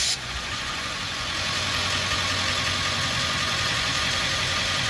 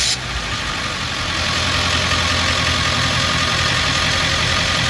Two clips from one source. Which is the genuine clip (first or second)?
second